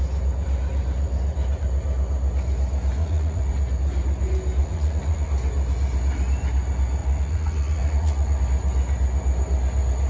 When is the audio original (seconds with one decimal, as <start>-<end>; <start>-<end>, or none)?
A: 0.0-3.0; 3.5-4.6; 5.3-7.0; 8.4-10.1